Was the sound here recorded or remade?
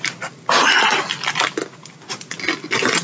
recorded